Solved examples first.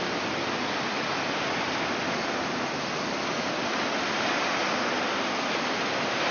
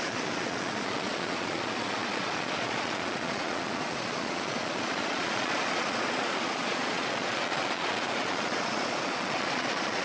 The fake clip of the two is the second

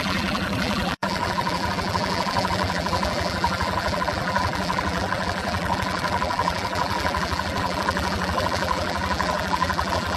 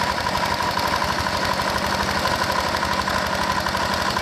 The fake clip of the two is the first